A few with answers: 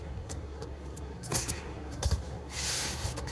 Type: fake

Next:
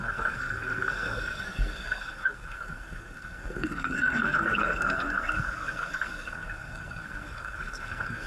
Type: fake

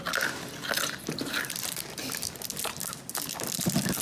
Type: real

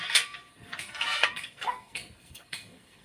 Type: fake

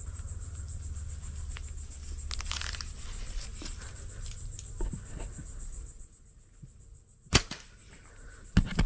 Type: real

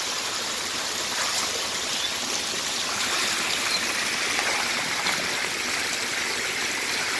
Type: real